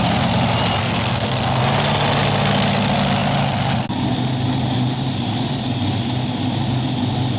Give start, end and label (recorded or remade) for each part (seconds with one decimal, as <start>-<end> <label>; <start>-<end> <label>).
0.0-0.8 recorded; 0.8-1.6 remade; 1.6-7.4 recorded